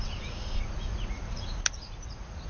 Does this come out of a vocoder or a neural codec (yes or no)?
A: yes